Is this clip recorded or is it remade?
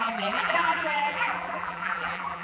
remade